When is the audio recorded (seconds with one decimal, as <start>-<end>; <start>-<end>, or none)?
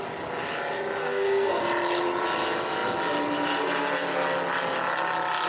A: 0.0-1.0; 1.6-5.5